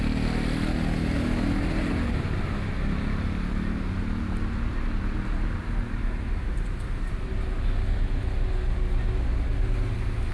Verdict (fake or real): real